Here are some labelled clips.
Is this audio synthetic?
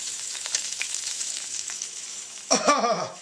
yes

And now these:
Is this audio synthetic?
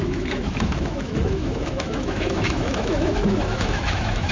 yes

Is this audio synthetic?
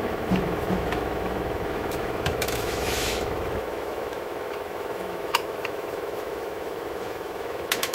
yes